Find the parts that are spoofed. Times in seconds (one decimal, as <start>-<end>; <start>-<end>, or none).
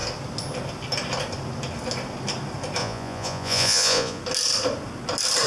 2.8-4.2